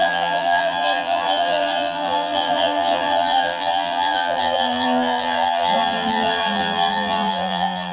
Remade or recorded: remade